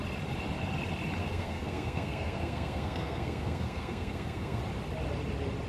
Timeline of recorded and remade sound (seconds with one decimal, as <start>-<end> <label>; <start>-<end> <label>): 0.0-1.2 recorded; 1.2-4.6 remade; 4.6-5.7 recorded